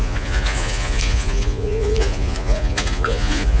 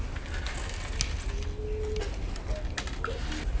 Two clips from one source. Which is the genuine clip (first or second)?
second